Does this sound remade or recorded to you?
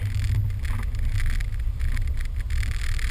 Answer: recorded